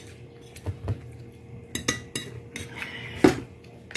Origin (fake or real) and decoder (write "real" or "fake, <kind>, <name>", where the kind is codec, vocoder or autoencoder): real